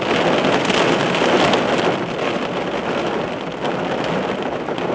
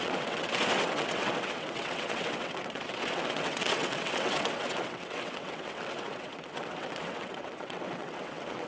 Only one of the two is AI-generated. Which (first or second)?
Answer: second